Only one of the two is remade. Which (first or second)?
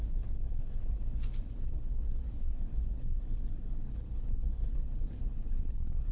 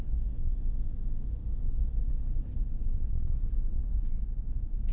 first